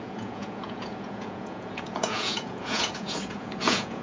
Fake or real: fake